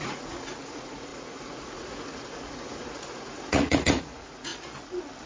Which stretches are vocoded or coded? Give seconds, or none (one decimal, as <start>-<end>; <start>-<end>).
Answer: 0.0-4.5